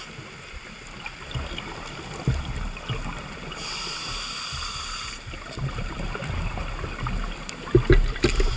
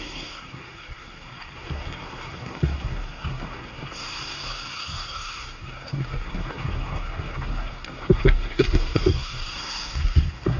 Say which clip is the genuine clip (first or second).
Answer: first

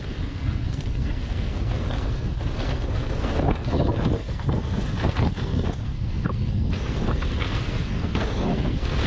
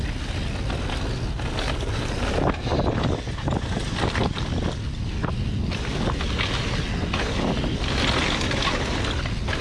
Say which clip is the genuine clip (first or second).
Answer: second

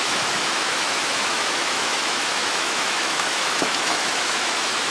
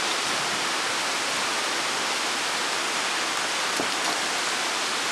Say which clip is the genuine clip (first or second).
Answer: second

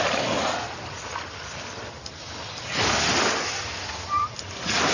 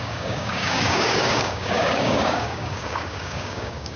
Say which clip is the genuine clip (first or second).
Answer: first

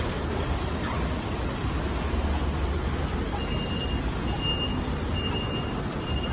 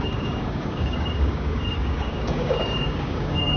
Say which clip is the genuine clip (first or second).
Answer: first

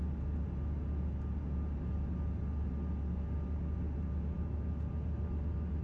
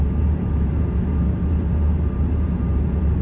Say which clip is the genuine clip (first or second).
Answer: first